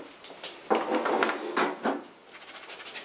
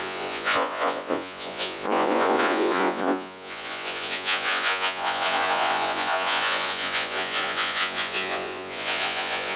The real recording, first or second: first